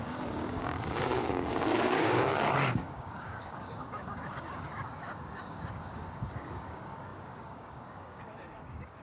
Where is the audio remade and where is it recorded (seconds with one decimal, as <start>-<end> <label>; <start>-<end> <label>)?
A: 0.0-9.0 remade